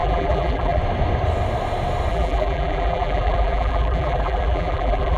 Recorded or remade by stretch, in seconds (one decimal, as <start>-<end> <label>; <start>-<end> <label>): 0.0-0.8 remade; 0.8-2.1 recorded; 2.1-5.2 remade